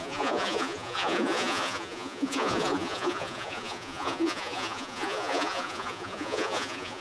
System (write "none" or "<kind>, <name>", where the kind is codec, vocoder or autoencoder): vocoder, Vocos